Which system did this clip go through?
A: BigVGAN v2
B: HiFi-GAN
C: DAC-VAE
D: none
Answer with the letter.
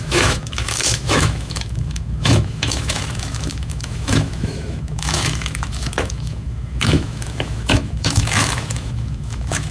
C